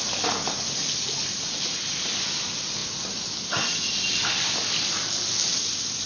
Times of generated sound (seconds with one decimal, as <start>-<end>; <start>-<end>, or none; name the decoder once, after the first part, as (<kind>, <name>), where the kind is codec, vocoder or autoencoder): none